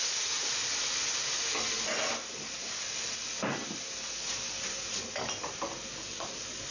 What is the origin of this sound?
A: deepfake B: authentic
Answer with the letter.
B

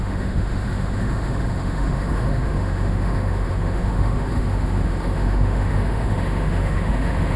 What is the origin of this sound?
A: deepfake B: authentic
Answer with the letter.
A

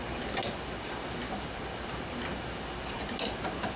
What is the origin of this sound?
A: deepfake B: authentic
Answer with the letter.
B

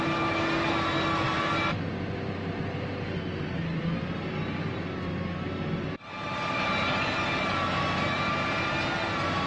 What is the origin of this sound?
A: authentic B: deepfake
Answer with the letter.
A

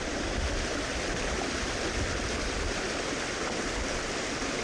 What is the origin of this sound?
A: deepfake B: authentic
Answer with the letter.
B